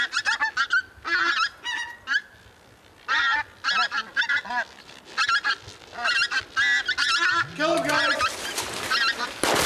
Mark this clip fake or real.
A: real